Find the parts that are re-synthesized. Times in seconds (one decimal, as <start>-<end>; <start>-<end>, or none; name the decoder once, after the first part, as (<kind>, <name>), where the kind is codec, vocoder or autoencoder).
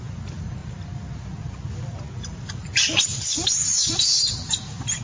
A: none